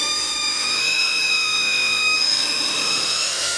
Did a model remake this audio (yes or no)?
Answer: yes